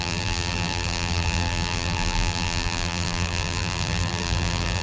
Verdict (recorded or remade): remade